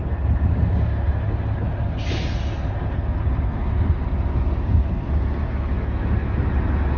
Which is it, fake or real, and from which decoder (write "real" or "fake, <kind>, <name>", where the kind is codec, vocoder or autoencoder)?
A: real